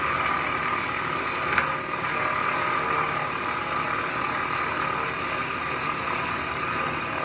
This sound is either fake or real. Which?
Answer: real